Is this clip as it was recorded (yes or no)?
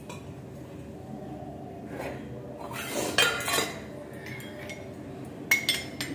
yes